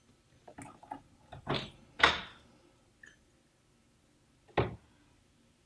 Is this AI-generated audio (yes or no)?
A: no